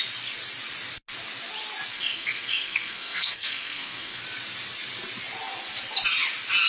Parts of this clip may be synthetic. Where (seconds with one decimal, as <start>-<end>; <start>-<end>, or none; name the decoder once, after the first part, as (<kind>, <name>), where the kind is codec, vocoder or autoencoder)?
1.9-4.2 (codec, SNAC)